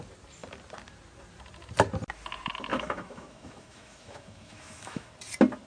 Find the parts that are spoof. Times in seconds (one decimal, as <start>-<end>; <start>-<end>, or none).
2.7-5.1